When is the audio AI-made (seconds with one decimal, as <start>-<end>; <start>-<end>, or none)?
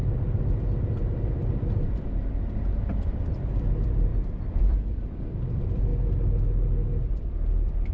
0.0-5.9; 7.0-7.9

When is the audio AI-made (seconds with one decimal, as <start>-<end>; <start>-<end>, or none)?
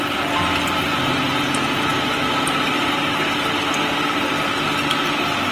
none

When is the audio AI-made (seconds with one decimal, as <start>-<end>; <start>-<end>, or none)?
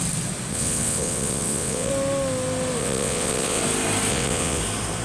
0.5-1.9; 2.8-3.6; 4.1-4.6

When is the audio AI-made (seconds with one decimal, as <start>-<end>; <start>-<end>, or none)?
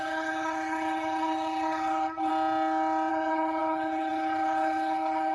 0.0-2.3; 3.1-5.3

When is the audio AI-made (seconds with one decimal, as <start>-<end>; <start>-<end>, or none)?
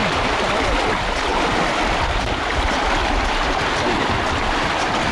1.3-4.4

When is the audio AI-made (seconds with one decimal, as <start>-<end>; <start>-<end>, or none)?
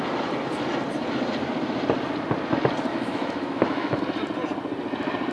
2.9-4.0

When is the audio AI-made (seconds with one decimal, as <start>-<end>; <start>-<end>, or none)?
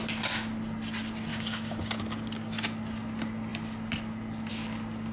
1.3-2.0